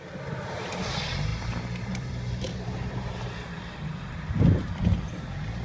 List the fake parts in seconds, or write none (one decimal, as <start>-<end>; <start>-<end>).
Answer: 1.3-4.7